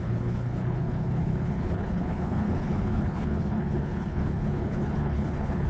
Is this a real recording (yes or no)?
no